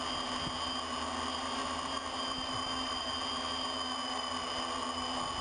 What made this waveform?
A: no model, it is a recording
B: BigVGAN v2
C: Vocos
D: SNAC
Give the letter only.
A